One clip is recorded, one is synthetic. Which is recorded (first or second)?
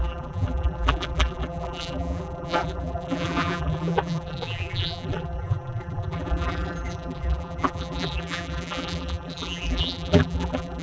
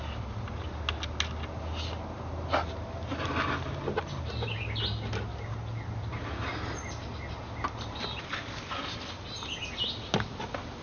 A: second